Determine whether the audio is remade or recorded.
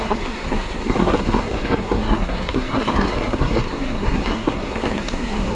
remade